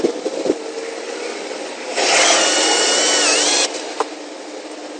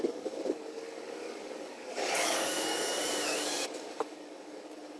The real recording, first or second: first